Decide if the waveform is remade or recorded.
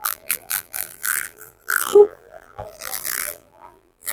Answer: remade